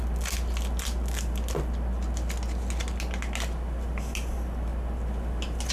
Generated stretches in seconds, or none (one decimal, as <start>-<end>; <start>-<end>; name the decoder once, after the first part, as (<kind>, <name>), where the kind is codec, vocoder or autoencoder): none